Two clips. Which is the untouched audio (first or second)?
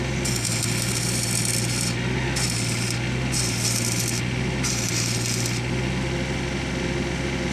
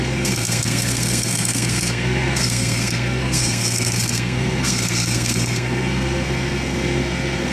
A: first